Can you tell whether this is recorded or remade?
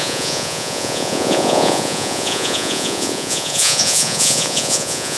remade